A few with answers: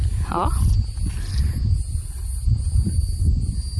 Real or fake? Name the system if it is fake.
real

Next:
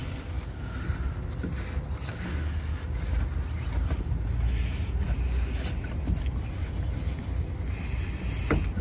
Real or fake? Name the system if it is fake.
real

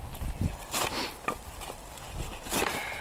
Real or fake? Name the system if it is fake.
real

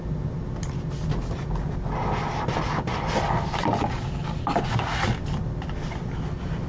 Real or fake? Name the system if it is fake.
real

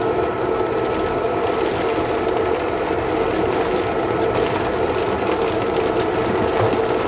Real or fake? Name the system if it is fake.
real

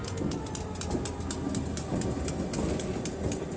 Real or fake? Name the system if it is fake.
real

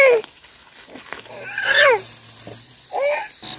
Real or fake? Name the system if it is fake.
real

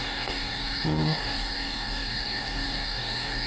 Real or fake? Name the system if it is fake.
fake, codec, DAC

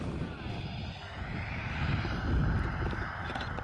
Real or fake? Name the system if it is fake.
real